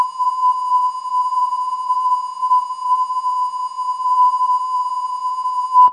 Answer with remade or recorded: remade